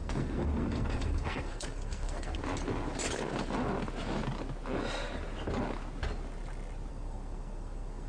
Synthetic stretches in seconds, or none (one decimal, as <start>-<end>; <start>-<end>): 0.0-2.4; 6.9-8.1